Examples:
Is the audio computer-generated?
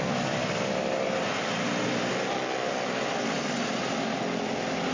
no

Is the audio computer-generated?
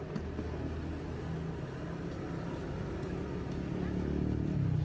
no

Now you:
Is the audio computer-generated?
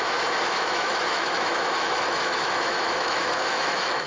yes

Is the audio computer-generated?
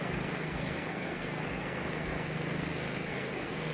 yes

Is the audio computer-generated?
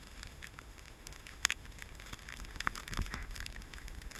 yes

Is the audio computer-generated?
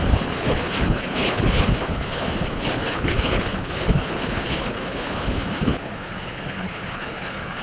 yes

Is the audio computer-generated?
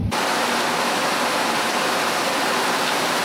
yes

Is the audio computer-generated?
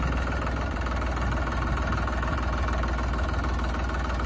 no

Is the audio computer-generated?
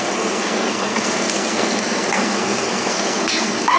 yes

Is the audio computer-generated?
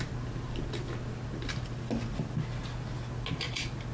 no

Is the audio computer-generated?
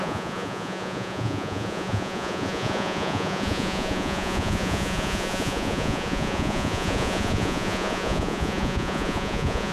yes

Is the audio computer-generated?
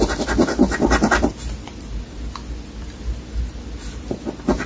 no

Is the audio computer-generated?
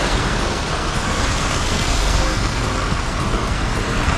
yes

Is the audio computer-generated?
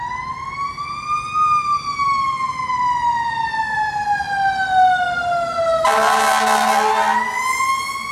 no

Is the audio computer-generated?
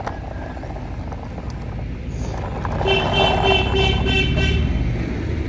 no